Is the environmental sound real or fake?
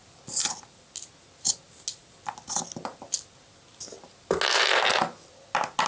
real